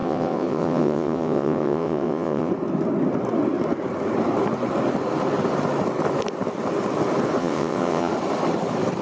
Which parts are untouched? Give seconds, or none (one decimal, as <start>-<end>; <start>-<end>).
2.5-7.4; 8.1-9.0